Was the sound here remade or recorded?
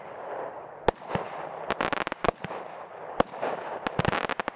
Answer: recorded